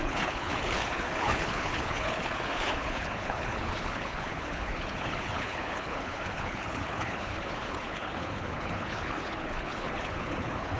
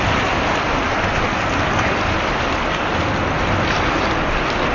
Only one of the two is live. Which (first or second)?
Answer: second